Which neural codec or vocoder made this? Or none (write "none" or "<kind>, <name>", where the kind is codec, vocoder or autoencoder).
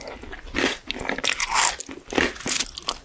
none